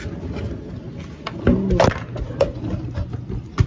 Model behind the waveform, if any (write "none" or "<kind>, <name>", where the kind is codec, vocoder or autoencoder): none